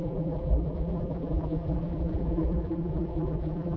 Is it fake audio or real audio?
fake